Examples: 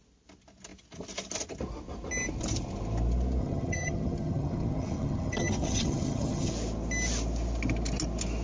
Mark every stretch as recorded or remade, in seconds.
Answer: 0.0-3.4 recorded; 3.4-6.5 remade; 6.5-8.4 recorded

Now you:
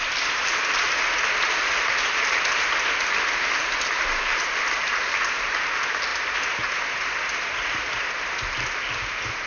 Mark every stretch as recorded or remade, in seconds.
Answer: 0.0-9.5 recorded

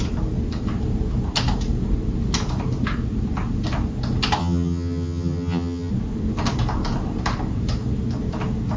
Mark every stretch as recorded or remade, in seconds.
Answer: 0.0-4.4 recorded; 4.4-5.9 remade; 5.9-8.8 recorded

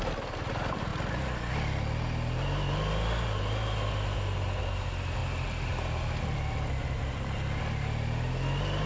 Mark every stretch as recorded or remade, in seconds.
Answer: 0.0-8.9 recorded